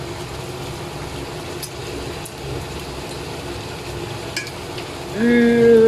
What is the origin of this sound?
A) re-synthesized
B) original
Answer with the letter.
B